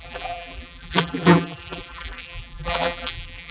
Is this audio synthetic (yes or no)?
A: yes